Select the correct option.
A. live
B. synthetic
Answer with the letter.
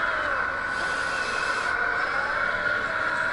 A